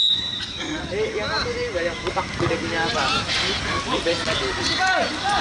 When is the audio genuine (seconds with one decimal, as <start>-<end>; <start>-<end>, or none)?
0.0-5.4